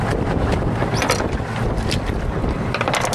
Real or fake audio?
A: real